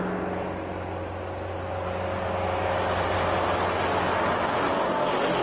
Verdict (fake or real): real